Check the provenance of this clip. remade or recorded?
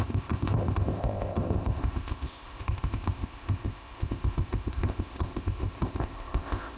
remade